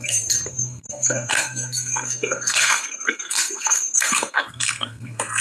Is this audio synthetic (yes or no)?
yes